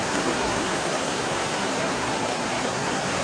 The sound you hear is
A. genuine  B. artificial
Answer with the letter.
B